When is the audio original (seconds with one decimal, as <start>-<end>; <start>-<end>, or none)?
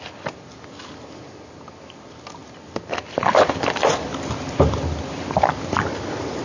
0.0-6.4